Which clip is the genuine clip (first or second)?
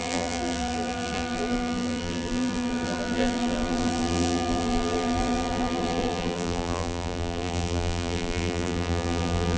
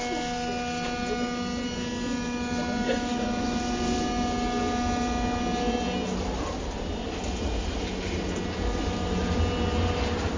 second